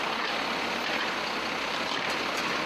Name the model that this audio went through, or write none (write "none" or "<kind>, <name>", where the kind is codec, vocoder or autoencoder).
none